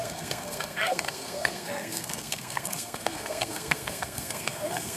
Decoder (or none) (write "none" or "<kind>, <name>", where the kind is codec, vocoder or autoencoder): codec, SNAC